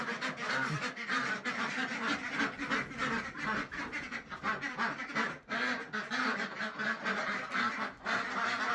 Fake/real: real